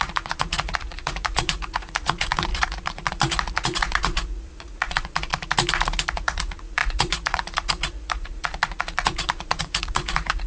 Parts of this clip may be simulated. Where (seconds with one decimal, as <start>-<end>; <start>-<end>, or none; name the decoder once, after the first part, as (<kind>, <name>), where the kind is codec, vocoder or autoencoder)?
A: 0.0-5.3 (vocoder, Vocos); 6.1-10.5